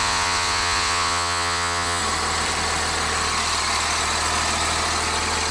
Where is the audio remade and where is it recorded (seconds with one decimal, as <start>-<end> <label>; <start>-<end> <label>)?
0.0-2.0 remade; 2.0-5.5 recorded